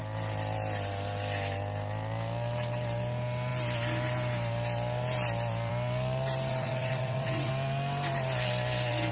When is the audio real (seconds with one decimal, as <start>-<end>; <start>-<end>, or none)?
0.0-6.5; 7.5-9.1